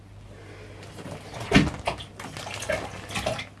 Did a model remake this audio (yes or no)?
no